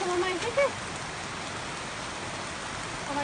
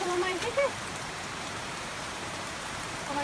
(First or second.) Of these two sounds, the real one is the first